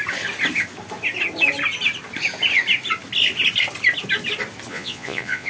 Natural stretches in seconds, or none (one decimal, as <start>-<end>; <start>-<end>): 0.0-4.7

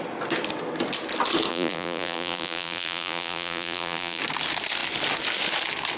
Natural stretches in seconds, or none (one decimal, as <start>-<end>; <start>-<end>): 0.0-1.5; 4.2-6.0

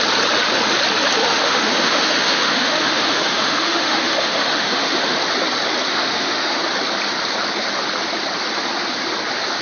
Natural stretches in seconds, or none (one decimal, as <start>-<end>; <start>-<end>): 0.0-1.2; 5.2-5.9; 6.6-9.6

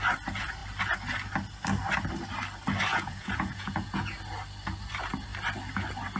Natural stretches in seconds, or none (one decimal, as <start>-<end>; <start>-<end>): 0.0-2.9; 4.1-6.2

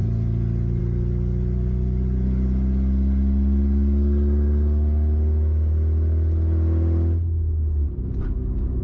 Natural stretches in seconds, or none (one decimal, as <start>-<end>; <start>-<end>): 0.0-8.8